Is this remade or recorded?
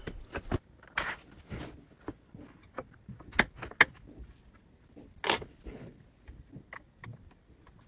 recorded